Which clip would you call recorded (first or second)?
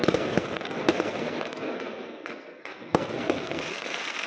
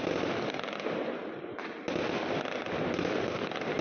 second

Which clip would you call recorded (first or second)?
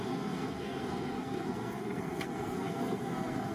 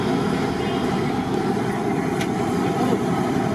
second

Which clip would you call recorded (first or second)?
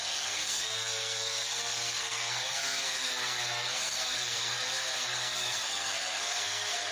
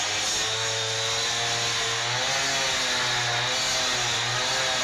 second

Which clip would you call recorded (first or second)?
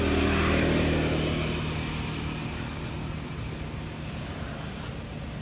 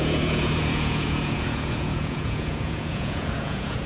first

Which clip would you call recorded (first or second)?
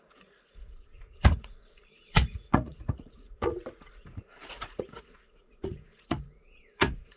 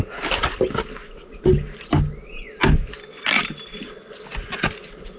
second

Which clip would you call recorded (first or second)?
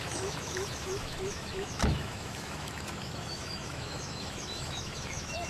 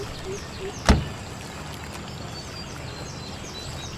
second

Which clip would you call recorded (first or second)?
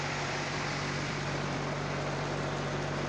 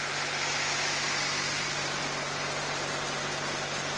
second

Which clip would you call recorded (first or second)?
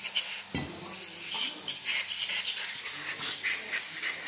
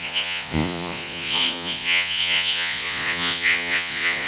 first